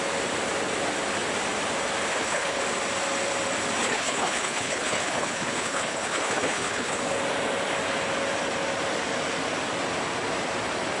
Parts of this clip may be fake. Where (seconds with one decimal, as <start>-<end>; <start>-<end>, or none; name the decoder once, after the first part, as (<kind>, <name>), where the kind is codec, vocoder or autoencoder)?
2.1-2.6 (codec, HILCodec); 3.8-7.0